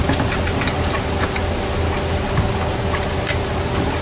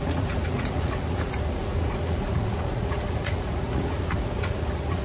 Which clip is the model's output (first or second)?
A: second